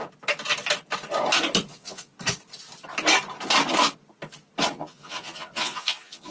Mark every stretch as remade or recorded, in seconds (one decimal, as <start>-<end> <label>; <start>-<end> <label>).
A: 0.0-1.7 recorded; 1.7-2.1 remade; 2.1-4.7 recorded; 4.7-6.3 remade